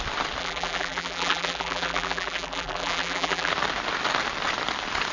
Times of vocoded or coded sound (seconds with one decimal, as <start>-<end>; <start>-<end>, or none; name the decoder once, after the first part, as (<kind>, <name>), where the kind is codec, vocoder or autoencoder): 0.4-3.5 (vocoder, BigVGAN v2)